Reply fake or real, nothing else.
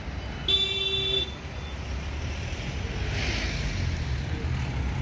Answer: real